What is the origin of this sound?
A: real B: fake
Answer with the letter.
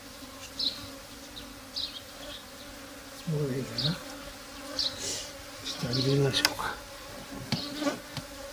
A